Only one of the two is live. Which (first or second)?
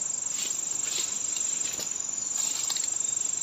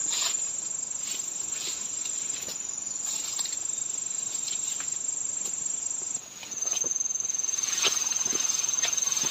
first